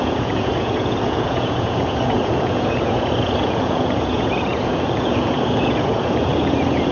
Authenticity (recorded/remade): remade